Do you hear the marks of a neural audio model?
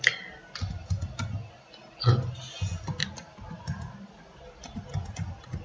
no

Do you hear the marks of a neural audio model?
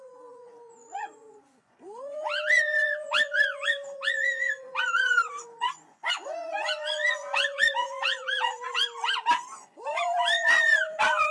yes